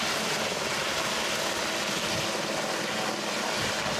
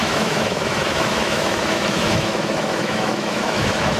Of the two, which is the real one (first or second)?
first